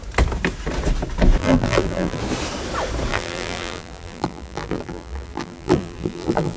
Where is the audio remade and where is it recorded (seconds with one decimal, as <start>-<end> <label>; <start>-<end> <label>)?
0.0-1.4 recorded; 1.4-2.2 remade; 2.2-3.1 recorded; 3.1-6.6 remade